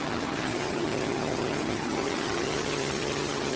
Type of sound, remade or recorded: remade